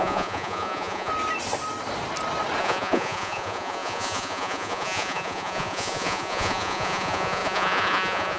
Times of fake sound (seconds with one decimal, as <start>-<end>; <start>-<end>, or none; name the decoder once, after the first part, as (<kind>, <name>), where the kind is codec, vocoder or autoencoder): 0.0-1.1 (vocoder, Vocos); 2.6-8.4